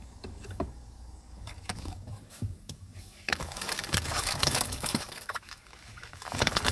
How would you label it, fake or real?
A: fake